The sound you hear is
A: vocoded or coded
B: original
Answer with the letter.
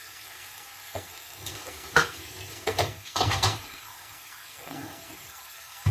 A